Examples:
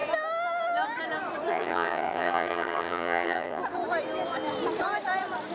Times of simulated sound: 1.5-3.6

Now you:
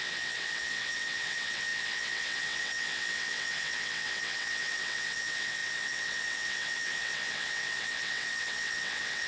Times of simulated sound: 0.0-9.3

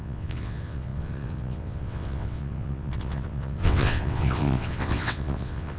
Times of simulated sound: 0.0-5.8

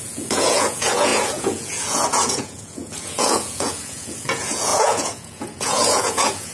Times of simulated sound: 0.0-6.5

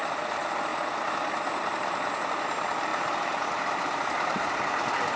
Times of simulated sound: 0.0-0.7; 2.2-5.2

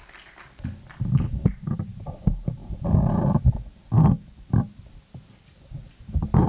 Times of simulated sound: none

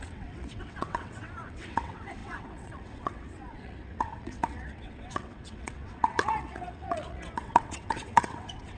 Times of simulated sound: 0.0-8.8

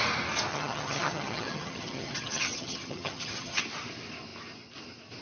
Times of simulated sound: 0.5-3.6